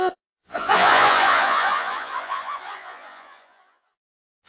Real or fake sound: fake